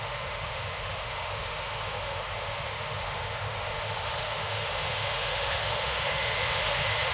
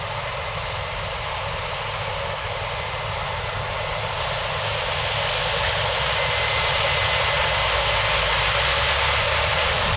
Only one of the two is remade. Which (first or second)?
first